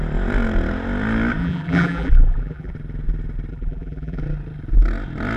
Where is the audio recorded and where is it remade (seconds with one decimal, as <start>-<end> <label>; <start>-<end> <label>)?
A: 0.0-1.4 recorded; 1.4-2.7 remade; 2.7-3.5 recorded; 3.5-4.2 remade; 4.2-5.4 recorded